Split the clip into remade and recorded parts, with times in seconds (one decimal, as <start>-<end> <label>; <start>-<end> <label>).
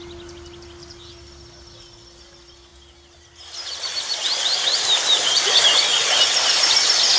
0.0-7.2 recorded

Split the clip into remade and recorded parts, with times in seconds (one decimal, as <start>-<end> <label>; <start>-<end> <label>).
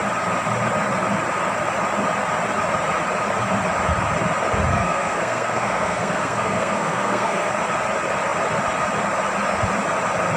0.0-4.7 recorded; 4.7-7.5 remade; 7.5-10.4 recorded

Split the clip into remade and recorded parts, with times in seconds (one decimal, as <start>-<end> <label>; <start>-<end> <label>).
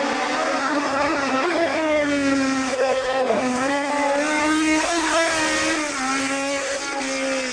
0.0-0.6 recorded; 0.6-3.9 remade; 3.9-4.4 recorded; 4.4-5.3 remade; 5.3-6.2 recorded; 6.2-6.8 remade; 6.8-7.5 recorded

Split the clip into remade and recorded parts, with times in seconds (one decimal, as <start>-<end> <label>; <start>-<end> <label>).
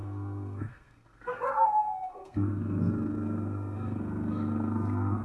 0.0-5.2 remade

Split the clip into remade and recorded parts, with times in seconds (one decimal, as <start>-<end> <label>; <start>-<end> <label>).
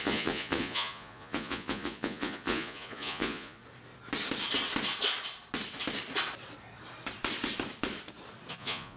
0.0-3.6 remade; 3.6-8.5 recorded; 8.5-9.0 remade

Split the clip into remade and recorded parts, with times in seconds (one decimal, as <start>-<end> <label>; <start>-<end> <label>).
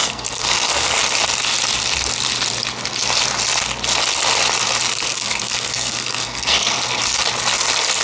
0.0-1.0 remade; 1.0-4.9 recorded; 4.9-7.0 remade; 7.0-8.0 recorded